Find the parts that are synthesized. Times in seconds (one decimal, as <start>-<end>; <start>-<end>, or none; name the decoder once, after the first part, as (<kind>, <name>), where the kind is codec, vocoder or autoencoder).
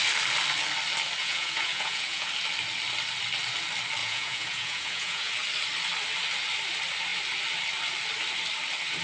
1.2-2.3 (vocoder, Vocos); 4.0-5.3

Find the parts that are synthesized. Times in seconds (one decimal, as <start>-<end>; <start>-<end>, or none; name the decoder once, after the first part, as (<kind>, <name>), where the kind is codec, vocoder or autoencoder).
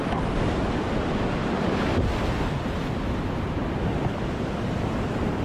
none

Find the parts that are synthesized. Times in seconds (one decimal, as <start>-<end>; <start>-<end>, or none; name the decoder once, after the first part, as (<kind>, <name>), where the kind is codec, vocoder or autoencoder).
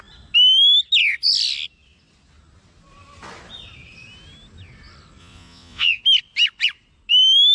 5.2-6.0 (vocoder, Vocos)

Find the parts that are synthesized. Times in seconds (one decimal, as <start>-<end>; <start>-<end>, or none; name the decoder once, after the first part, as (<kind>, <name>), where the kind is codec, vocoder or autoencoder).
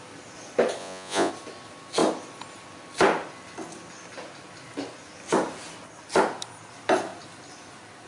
0.8-1.3 (vocoder, Vocos)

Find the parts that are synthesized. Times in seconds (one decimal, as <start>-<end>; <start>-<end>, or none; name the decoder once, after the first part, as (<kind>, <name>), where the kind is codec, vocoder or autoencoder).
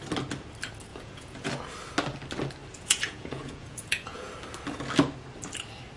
0.9-1.5 (vocoder, Vocos); 2.7-4.3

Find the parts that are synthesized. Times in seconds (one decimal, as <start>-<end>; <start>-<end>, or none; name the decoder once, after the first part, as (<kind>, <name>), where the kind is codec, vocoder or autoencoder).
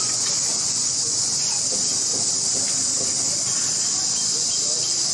0.0-1.6 (vocoder, Vocos)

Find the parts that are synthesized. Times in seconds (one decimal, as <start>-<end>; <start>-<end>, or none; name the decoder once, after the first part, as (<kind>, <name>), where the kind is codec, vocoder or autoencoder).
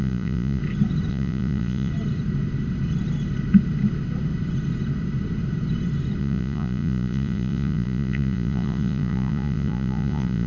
0.0-0.6 (vocoder, Vocos); 1.1-1.9; 6.2-10.5